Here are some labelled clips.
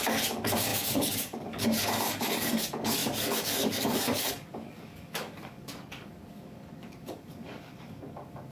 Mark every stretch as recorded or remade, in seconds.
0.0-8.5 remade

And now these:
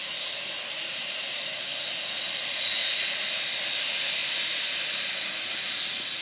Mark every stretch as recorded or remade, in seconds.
0.0-6.2 recorded

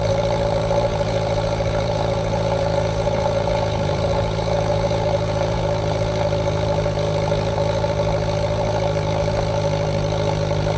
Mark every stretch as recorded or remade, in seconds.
0.0-0.9 recorded; 0.9-5.6 remade; 5.6-10.8 recorded

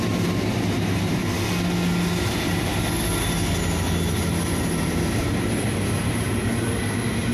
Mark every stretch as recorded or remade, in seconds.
0.0-1.2 remade; 1.2-2.2 recorded; 2.2-2.7 remade; 2.7-5.2 recorded; 5.2-7.3 remade

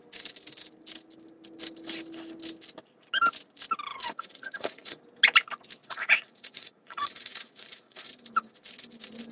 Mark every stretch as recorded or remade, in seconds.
0.0-3.9 recorded; 3.9-5.0 remade; 5.0-5.8 recorded; 5.8-8.1 remade; 8.1-9.3 recorded